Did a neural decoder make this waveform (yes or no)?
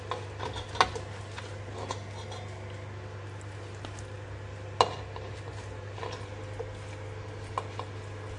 no